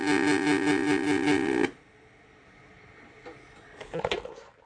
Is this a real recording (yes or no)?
yes